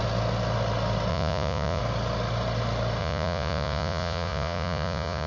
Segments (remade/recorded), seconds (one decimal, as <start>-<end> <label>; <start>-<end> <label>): 0.0-1.1 recorded; 1.1-1.8 remade; 1.8-3.0 recorded; 3.0-5.3 remade